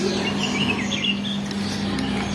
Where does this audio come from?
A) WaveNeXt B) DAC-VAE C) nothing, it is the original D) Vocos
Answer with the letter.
C